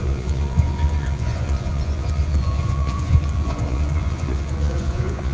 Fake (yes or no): yes